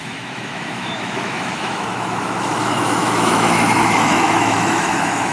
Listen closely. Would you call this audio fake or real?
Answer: fake